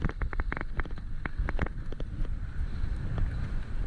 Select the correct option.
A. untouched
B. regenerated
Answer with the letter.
A